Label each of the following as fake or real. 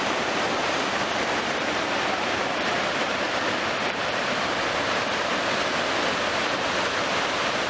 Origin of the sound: fake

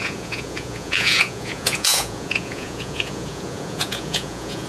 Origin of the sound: fake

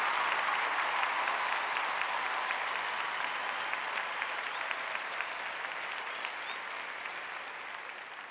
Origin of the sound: real